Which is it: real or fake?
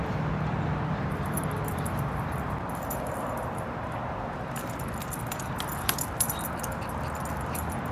fake